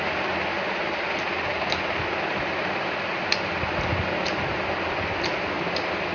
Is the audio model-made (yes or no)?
no